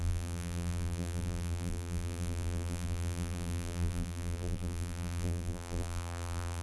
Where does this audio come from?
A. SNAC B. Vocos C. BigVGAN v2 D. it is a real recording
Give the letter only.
C